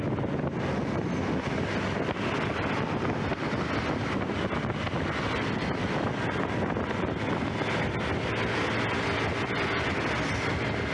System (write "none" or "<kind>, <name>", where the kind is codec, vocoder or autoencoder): none